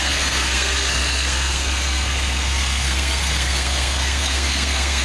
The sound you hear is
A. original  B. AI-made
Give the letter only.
B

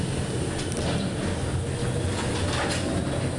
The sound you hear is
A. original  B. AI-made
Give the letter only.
A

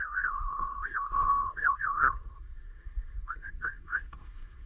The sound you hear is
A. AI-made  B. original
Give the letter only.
A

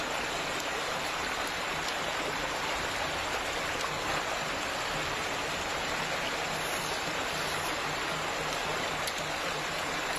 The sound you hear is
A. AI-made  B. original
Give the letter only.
B